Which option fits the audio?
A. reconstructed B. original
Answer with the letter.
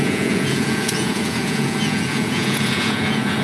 A